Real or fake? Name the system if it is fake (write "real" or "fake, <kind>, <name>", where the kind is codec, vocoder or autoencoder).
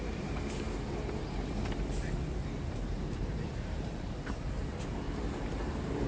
fake, vocoder, BigVGAN v2